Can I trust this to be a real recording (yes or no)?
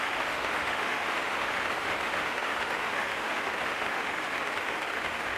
no